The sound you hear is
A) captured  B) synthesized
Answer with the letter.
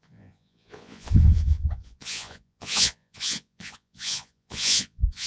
B